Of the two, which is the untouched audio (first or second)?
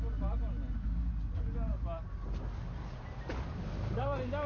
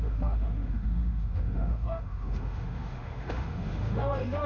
first